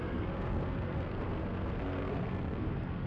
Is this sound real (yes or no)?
no